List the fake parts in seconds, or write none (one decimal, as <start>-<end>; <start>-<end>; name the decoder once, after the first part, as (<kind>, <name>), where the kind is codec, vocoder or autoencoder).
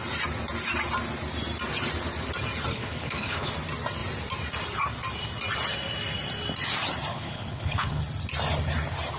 2.7-3.5 (codec, HILCodec); 7.1-8.0